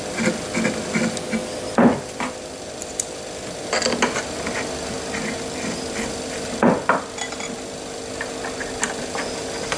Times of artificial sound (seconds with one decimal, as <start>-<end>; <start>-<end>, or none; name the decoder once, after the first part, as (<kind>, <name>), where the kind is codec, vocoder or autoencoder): none